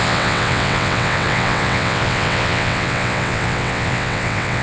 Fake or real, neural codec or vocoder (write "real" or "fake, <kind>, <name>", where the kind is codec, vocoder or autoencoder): fake, vocoder, WaveNeXt